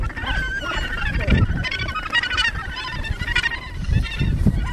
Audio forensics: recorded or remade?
recorded